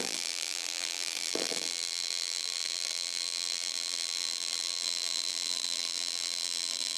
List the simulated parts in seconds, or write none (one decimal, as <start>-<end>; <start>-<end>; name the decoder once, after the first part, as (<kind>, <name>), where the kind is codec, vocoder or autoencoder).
0.0-7.0 (vocoder, BigVGAN v2)